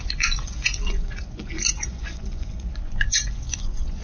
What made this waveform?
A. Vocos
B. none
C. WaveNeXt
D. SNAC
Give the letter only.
A